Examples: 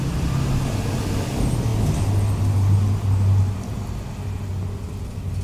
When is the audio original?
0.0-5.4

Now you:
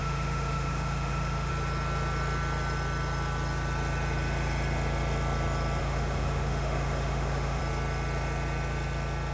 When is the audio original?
1.5-5.8; 7.6-9.3

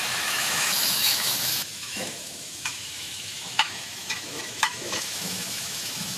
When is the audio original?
none